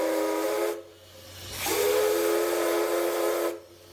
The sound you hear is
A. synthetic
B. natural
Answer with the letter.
B